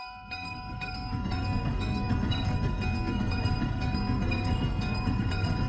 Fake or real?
fake